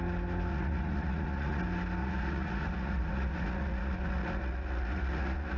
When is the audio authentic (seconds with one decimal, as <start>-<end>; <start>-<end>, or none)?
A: 0.0-0.5; 1.6-2.0